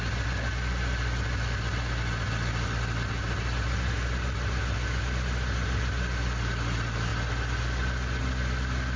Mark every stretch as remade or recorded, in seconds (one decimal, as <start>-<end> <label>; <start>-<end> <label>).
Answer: 0.0-9.0 recorded